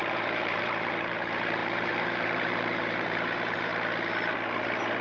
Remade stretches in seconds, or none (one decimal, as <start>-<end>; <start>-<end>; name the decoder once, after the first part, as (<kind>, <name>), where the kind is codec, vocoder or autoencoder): 0.0-3.7 (vocoder, BigVGAN v2)